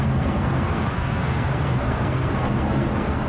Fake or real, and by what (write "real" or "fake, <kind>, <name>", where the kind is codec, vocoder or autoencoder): fake, codec, SNAC